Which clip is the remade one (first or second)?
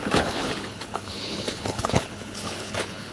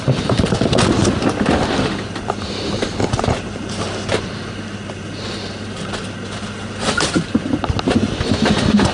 first